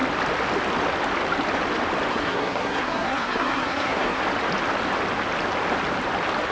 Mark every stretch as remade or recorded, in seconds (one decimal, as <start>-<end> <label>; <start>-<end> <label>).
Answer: 0.0-2.1 recorded; 2.1-4.2 remade; 4.2-6.5 recorded